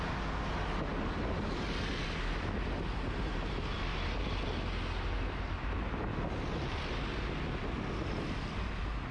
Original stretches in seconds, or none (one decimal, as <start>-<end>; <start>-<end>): 0.0-9.1